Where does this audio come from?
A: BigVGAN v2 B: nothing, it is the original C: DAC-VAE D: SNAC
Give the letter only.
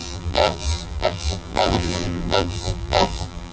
A